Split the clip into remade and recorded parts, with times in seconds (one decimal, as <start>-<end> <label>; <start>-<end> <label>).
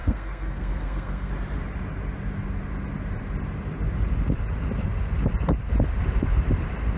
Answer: 0.0-1.3 remade; 1.3-7.0 recorded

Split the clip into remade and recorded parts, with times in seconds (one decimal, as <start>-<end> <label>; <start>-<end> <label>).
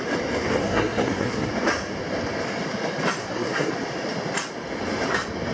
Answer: 0.0-0.6 recorded; 0.6-1.5 remade; 1.5-3.2 recorded; 3.2-3.7 remade; 3.7-5.5 recorded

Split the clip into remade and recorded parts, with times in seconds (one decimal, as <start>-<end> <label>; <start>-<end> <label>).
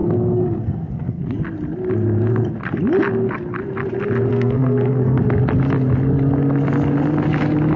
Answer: 0.0-1.2 remade; 1.2-4.3 recorded; 4.3-5.2 remade; 5.2-7.8 recorded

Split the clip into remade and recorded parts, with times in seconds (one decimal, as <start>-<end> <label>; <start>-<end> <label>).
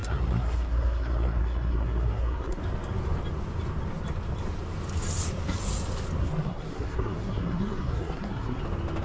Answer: 0.0-2.6 remade; 2.6-6.2 recorded; 6.2-8.6 remade; 8.6-9.0 recorded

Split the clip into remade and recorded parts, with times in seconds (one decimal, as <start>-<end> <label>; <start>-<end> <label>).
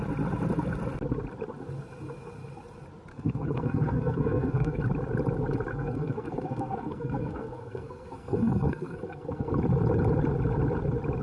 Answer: 0.0-3.1 recorded; 3.1-4.8 remade; 4.8-5.7 recorded; 5.7-9.5 remade; 9.5-11.2 recorded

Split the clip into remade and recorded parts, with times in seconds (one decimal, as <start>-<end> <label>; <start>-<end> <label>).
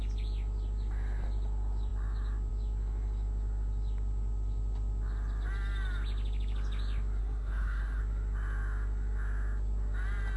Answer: 0.0-7.2 recorded; 7.2-8.0 remade; 8.0-10.4 recorded